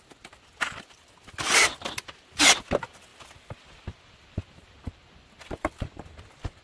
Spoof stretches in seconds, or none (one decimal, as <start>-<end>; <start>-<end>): 3.1-6.6